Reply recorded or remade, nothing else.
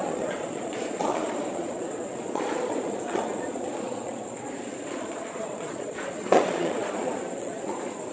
remade